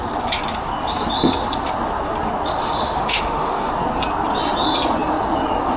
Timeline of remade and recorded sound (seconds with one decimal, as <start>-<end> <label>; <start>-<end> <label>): 0.0-2.6 recorded; 2.6-3.7 remade; 3.7-5.8 recorded